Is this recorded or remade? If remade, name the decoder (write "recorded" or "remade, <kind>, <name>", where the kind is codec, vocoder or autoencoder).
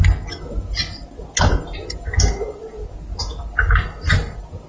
recorded